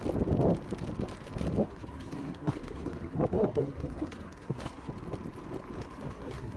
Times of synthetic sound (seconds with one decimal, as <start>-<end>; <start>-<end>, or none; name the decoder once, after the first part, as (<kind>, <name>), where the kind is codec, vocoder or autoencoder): 1.6-4.9 (codec, SNAC); 5.8-6.6